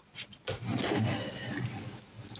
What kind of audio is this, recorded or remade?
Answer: recorded